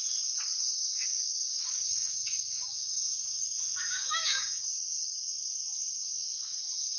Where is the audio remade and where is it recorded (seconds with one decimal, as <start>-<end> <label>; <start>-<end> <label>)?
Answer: 0.0-1.1 recorded; 1.1-5.3 remade; 5.3-7.0 recorded